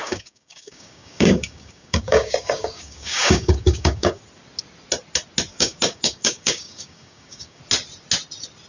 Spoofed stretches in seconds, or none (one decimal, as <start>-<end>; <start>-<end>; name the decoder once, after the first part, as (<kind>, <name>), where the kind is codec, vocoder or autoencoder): 0.0-4.2 (codec, DAC); 5.5-7.6